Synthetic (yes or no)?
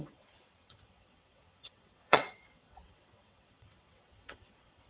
yes